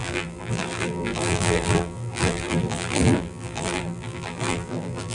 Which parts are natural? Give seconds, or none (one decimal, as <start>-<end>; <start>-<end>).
none